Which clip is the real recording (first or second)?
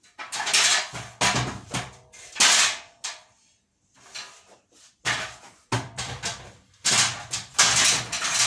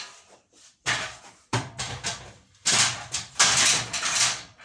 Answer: first